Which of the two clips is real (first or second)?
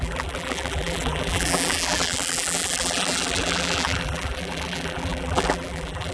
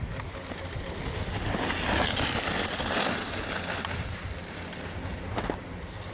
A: second